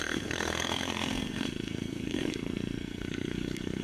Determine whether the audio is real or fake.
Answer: fake